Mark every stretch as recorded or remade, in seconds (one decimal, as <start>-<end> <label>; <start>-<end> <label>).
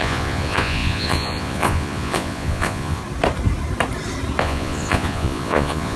0.0-3.0 remade; 3.0-4.4 recorded; 4.4-6.0 remade